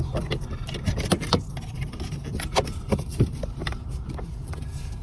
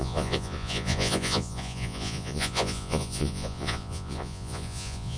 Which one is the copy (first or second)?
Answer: second